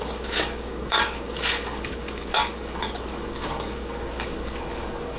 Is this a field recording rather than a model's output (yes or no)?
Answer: no